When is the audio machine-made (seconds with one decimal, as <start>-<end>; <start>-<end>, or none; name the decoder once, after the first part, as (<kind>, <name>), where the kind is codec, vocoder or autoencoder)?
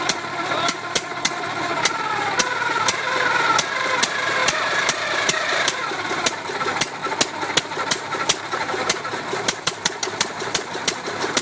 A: 0.0-1.7 (vocoder, BigVGAN v2); 2.4-7.0; 7.6-11.4